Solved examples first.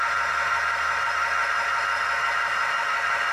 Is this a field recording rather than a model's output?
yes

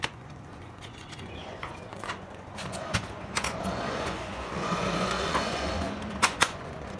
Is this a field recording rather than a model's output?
no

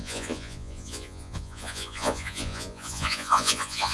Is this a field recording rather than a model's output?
no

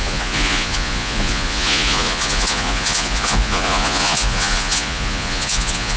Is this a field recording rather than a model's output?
no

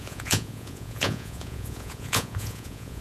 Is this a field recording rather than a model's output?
no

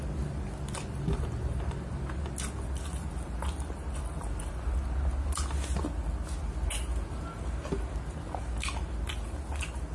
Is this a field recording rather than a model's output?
yes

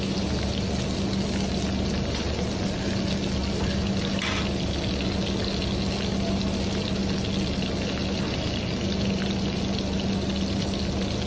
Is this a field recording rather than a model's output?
yes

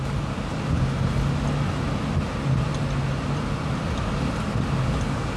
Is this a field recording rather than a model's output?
yes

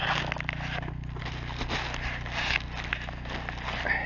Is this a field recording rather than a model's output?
yes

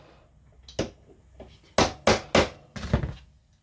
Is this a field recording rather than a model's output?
yes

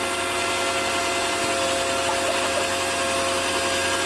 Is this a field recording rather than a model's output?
yes